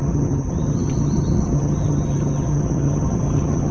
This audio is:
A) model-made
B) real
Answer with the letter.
A